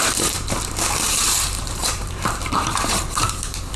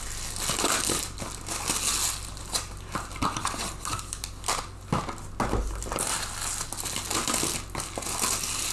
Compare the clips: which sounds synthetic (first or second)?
first